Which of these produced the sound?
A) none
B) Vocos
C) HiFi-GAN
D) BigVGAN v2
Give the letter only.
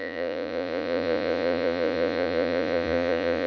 B